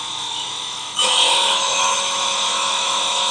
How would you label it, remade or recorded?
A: remade